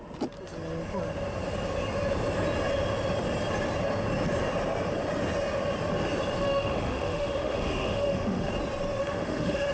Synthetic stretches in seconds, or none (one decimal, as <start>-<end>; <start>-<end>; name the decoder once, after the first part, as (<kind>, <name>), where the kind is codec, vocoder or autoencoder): 6.4-8.5 (autoencoder, DAC-VAE); 9.0-9.7